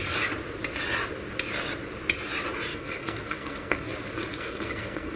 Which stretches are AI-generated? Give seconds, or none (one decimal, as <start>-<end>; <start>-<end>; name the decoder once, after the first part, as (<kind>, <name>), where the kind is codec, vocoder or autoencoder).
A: 2.7-3.9 (codec, SNAC); 4.3-5.2